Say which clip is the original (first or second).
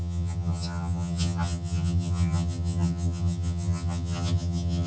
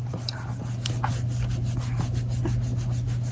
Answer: second